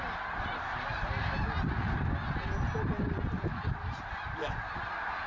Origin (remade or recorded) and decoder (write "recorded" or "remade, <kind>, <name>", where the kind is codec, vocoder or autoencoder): recorded